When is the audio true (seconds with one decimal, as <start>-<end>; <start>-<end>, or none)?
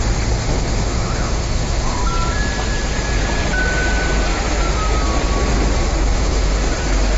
0.0-0.4; 2.0-6.0; 6.8-7.2